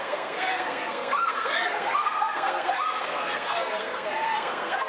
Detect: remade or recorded remade